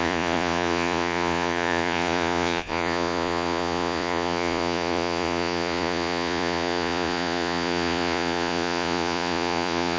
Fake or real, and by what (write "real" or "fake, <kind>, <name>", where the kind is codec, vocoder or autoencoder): fake, vocoder, Vocos